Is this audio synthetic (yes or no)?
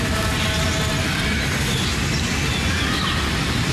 no